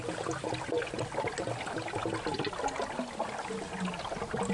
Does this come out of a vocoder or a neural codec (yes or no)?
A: no